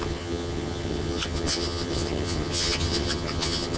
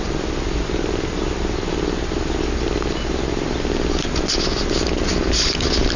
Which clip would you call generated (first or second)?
first